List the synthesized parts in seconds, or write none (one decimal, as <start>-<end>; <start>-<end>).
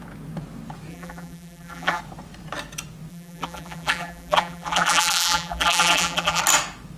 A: 0.9-2.0; 3.1-6.4